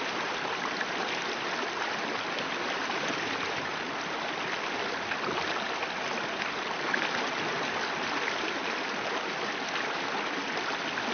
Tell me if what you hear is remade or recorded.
recorded